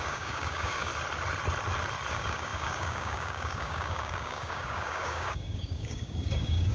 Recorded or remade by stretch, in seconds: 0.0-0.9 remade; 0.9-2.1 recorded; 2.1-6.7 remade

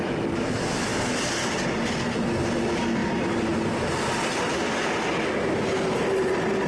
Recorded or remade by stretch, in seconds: 0.0-6.7 recorded

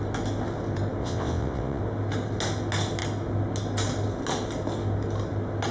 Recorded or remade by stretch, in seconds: 0.0-1.0 recorded; 1.0-1.8 remade; 1.8-5.7 recorded

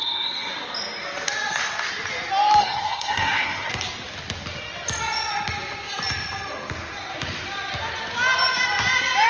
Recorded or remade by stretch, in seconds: 0.0-0.5 remade; 0.5-2.6 recorded; 2.6-3.7 remade; 3.7-9.3 recorded

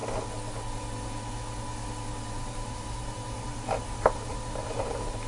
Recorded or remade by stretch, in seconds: 0.0-2.4 recorded; 2.4-5.3 remade